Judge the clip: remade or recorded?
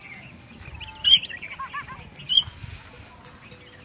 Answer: recorded